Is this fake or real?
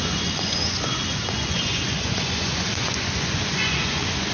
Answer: fake